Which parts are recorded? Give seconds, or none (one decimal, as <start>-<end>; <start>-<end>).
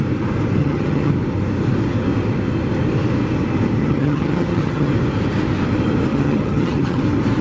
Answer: 0.0-0.6; 1.1-3.8; 4.9-6.1; 7.0-7.4